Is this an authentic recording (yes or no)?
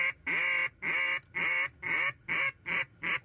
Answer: yes